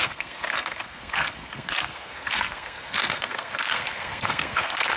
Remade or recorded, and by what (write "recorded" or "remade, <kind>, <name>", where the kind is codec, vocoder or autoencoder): remade, codec, SNAC